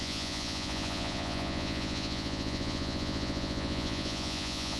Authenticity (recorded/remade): remade